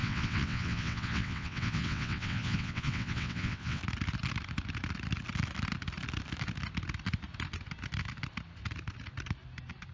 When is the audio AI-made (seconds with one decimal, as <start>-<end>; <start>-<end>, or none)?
0.0-3.8